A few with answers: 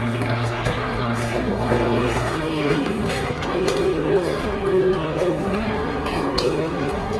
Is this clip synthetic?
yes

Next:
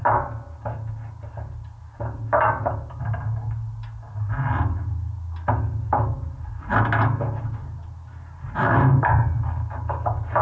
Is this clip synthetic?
no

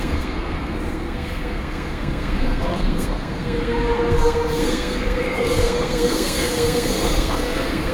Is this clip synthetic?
yes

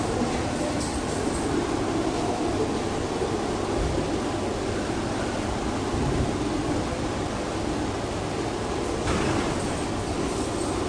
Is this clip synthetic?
no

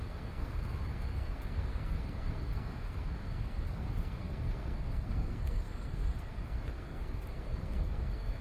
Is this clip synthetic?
yes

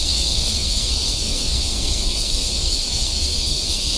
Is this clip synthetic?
yes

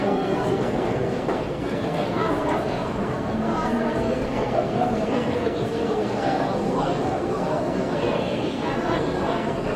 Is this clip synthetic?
yes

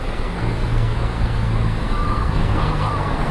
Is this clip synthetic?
yes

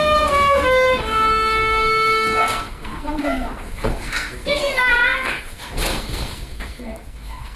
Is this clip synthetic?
yes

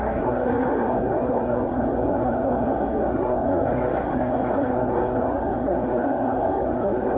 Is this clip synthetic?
yes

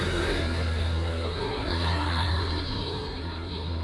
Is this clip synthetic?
yes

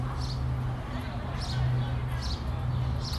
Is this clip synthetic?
no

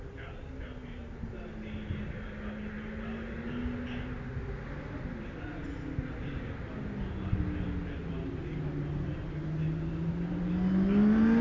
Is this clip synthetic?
no